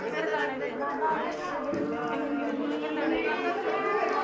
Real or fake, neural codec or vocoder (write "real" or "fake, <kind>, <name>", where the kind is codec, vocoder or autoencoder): real